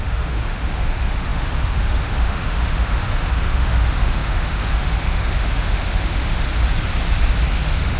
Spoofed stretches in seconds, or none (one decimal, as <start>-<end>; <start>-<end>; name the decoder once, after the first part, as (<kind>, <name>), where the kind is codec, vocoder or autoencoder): 0.0-6.5 (autoencoder, DAC-VAE); 7.5-8.0